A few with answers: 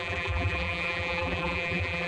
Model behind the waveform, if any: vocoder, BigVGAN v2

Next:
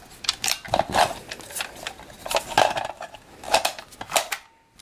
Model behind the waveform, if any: none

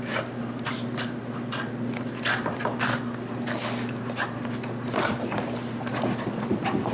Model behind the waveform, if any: none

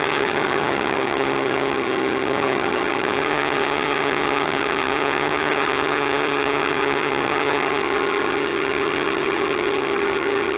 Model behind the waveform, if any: vocoder, HiFi-GAN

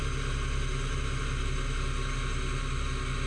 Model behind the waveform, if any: none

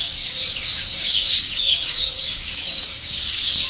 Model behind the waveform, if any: codec, DAC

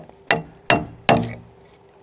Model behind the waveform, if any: none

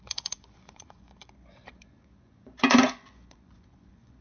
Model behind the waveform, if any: vocoder, Vocos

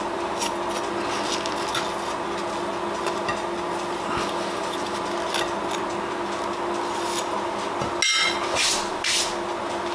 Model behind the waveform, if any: none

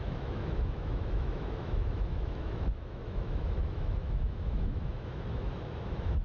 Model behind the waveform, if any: autoencoder, DAC-VAE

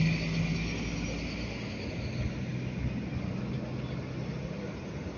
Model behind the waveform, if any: none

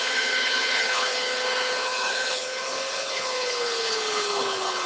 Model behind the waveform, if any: codec, HILCodec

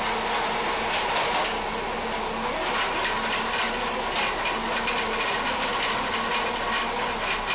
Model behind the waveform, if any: none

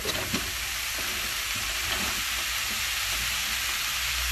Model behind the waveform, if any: none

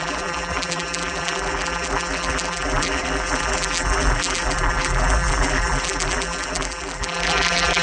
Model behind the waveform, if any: vocoder, BigVGAN v2